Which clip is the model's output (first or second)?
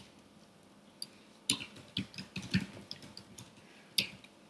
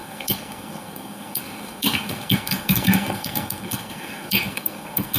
second